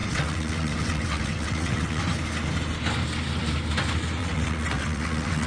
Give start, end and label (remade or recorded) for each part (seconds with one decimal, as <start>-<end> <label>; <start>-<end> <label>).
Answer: 0.0-2.0 remade; 2.0-4.2 recorded; 4.2-5.5 remade